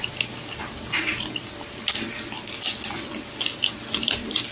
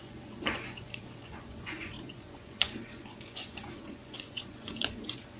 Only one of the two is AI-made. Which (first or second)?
second